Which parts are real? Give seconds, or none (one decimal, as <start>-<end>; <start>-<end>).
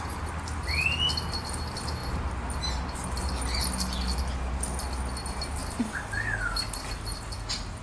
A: 0.0-5.6; 6.8-7.8